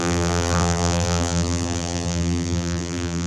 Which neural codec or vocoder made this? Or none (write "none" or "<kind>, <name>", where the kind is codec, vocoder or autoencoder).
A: vocoder, BigVGAN v2